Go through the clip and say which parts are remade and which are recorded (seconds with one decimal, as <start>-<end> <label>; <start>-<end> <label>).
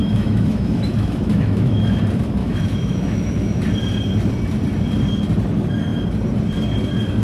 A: 0.0-2.0 remade; 2.0-2.4 recorded; 2.4-3.6 remade; 3.6-7.2 recorded